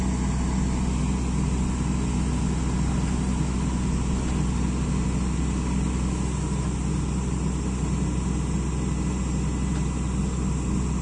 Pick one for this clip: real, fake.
real